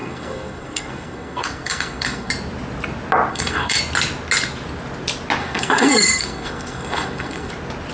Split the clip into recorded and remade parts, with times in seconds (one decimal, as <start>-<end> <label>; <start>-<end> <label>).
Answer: 0.0-2.3 remade; 2.3-3.3 recorded; 3.3-3.8 remade; 3.8-5.4 recorded; 5.4-7.5 remade; 7.5-7.9 recorded